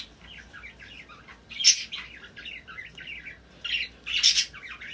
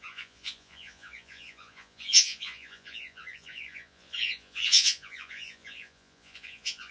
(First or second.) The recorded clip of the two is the first